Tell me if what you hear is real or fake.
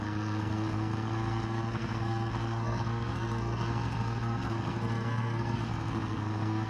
fake